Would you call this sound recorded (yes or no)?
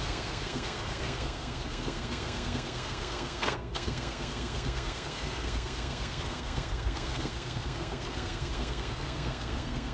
no